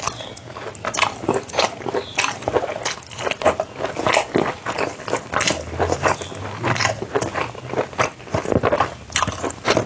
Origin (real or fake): real